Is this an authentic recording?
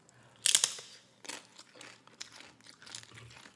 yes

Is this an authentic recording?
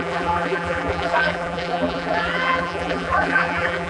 no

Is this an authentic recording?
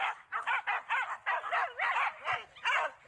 yes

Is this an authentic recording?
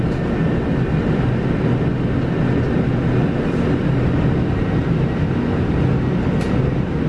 yes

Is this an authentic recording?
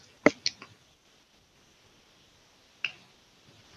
yes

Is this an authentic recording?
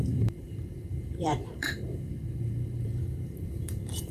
no